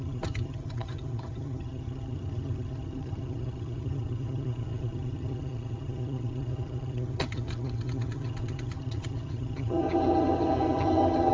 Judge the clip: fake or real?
fake